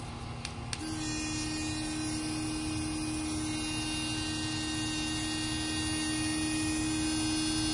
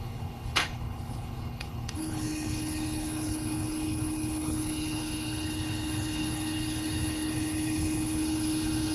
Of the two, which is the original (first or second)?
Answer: first